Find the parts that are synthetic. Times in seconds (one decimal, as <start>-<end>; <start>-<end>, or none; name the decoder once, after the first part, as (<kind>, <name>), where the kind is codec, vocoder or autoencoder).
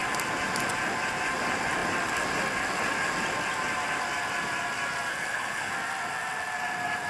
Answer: 5.1-5.7 (codec, HILCodec)